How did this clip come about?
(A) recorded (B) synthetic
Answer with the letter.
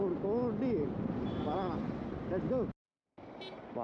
A